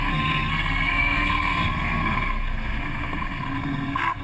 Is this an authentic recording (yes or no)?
no